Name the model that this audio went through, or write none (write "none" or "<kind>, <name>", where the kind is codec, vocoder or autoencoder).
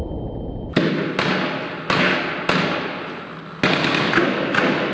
none